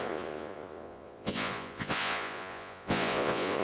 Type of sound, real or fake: fake